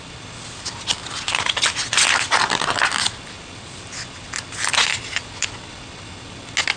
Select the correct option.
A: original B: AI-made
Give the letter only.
A